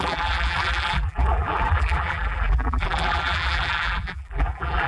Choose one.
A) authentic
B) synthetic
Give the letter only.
B